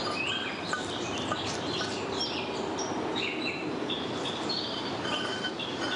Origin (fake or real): fake